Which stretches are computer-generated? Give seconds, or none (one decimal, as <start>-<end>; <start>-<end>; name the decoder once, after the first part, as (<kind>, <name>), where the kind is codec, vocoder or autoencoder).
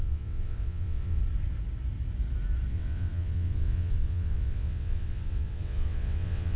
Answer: 0.0-1.2 (vocoder, WaveNeXt); 2.7-6.6